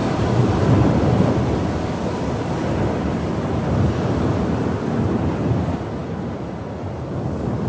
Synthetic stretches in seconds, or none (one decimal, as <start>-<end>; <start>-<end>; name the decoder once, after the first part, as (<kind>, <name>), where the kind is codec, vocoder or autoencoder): 6.0-6.8 (vocoder, BigVGAN v2)